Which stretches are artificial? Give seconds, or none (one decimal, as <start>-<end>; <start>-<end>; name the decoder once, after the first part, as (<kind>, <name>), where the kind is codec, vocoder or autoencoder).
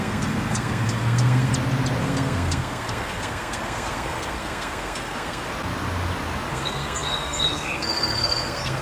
0.0-1.5 (codec, SNAC); 2.0-5.5; 6.5-8.8